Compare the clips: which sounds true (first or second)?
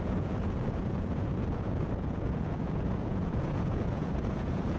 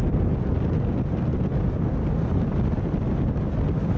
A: second